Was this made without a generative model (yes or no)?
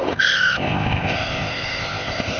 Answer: no